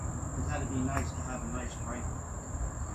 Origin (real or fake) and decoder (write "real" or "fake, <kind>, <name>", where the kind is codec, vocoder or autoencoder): real